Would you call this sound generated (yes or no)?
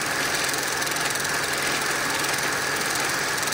no